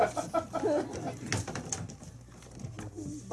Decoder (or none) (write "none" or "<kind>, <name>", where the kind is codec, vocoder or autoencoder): none